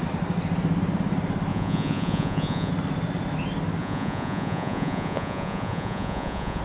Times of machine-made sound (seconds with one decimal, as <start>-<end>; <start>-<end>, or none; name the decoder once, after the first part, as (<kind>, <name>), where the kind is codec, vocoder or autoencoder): 1.5-2.7 (vocoder, Vocos); 3.8-6.6